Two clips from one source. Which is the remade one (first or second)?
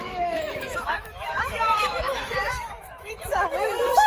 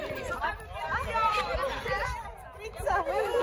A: first